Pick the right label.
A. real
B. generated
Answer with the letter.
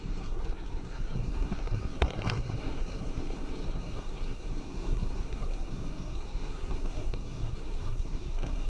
B